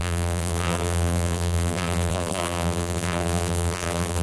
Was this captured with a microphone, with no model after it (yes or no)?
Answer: no